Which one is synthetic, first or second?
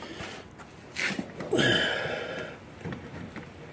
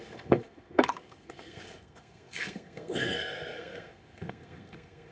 second